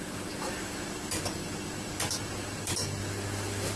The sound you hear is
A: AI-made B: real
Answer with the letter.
B